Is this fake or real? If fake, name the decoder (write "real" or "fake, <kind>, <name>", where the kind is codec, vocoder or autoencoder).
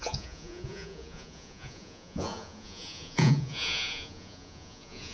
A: fake, vocoder, Vocos